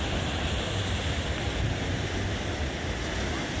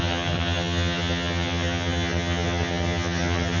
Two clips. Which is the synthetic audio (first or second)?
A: second